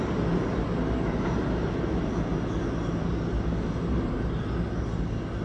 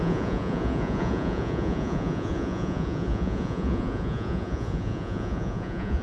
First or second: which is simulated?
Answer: second